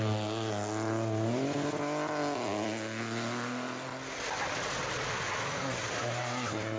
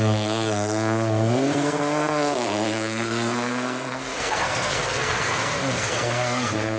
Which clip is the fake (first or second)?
second